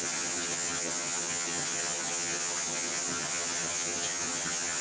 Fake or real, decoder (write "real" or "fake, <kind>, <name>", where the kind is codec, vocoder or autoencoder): fake, vocoder, HiFi-GAN